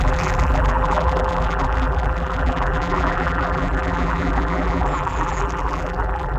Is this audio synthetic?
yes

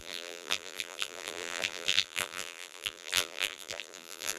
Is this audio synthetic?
yes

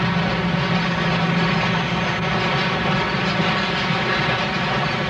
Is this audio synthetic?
no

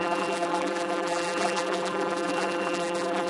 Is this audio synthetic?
yes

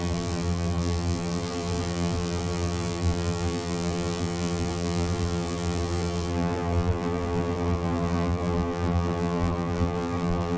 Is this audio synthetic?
yes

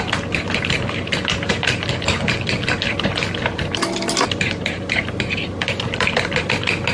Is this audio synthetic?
yes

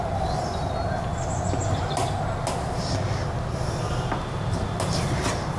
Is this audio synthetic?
no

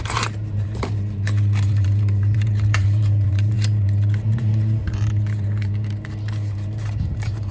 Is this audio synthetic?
yes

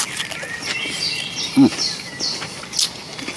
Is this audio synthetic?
no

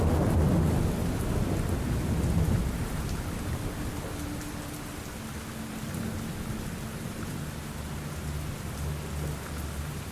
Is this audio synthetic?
no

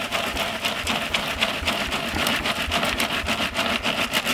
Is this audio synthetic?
no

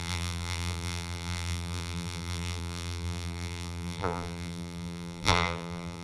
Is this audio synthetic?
yes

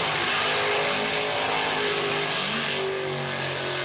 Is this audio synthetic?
no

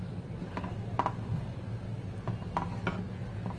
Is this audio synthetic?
no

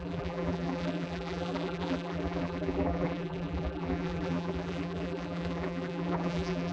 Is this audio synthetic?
yes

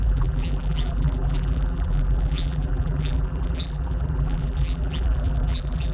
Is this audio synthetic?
yes